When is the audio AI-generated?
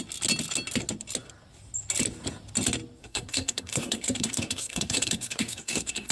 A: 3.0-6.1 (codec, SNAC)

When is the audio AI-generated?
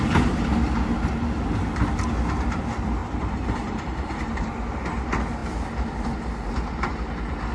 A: 3.0-4.5 (vocoder, BigVGAN v2)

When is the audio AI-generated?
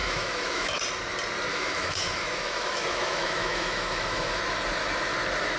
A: 0.0-0.8 (autoencoder, DAC-VAE); 1.5-4.4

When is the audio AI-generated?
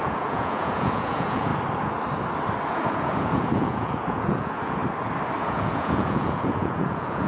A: 0.0-1.5 (vocoder, Vocos); 2.7-4.8; 5.4-7.3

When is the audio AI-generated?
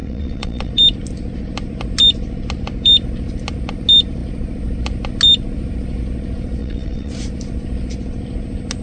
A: 0.0-0.7 (vocoder, WaveNeXt); 6.6-7.1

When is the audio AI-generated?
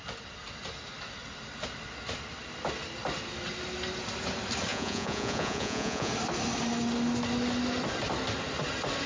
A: 4.7-6.1 (vocoder, Vocos)